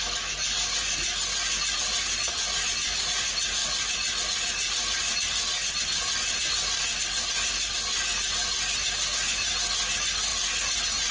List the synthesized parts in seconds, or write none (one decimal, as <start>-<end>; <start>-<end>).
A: none